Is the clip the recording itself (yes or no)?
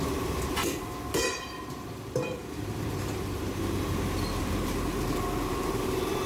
no